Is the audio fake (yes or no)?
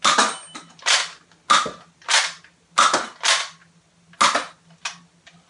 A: no